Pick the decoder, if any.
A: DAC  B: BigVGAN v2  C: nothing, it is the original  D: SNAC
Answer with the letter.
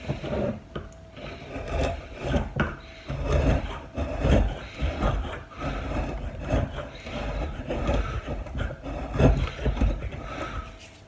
C